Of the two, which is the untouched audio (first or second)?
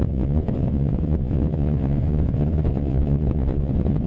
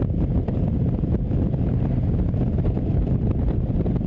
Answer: second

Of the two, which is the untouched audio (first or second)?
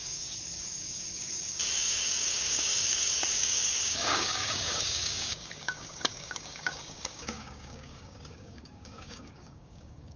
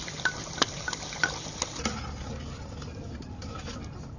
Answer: second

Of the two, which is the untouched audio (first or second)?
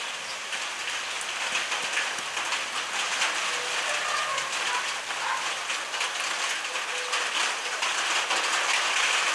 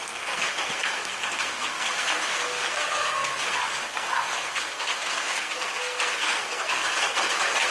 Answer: first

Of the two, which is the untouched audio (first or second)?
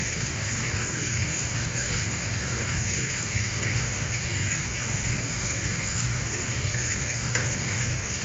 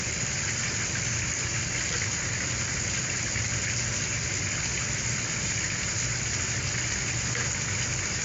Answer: second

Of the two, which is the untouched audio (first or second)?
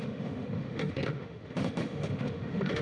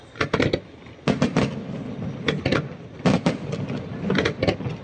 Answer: second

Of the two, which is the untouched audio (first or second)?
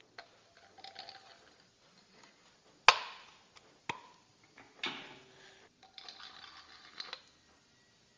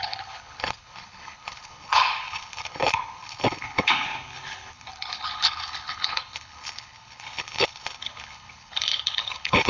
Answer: first